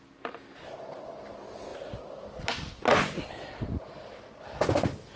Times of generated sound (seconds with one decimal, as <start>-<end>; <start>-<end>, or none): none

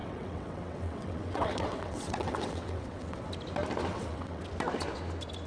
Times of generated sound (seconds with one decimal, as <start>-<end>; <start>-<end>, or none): 0.0-3.3; 3.9-4.4

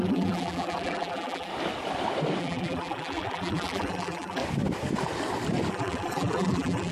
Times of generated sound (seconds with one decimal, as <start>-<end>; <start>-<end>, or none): 0.0-1.5; 2.4-4.4; 5.7-6.9

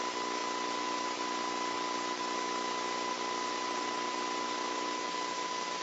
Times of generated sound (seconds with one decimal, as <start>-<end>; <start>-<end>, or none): none

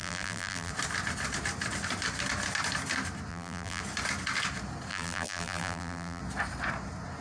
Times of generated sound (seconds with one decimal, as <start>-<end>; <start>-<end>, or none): 0.0-0.7; 3.3-3.8; 4.9-6.2

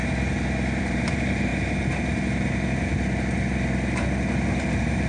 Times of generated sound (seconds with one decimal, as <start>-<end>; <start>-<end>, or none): 0.8-1.5; 4.6-5.1

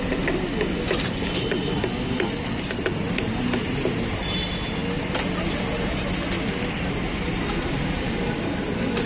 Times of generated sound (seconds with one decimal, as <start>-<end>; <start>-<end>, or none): none

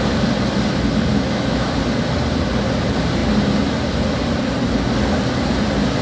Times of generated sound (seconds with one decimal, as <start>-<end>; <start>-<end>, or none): 1.1-1.7